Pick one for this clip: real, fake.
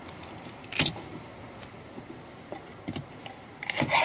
real